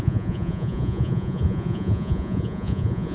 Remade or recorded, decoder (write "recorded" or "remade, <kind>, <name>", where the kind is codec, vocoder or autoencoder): remade, vocoder, Vocos